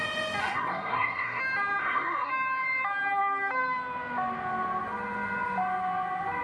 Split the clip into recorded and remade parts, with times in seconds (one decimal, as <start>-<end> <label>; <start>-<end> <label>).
0.0-0.4 recorded; 0.4-1.4 remade; 1.4-1.8 recorded; 1.8-2.3 remade; 2.3-6.4 recorded